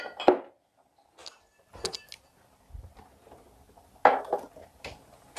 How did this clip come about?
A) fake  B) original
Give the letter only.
B